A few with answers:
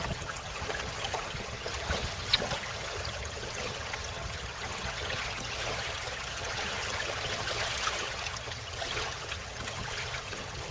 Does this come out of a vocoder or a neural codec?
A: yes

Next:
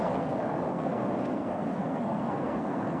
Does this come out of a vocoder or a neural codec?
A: yes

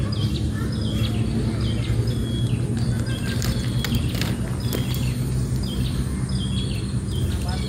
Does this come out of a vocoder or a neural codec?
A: no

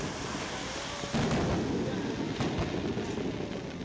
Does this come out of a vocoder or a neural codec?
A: no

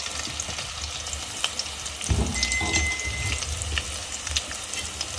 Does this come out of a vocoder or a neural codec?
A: no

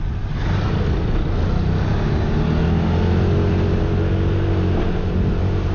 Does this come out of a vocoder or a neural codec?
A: no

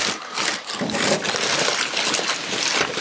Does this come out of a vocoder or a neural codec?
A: no